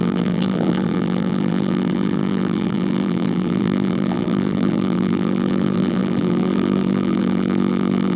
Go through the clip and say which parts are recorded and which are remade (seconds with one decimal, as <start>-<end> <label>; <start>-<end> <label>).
0.0-8.2 remade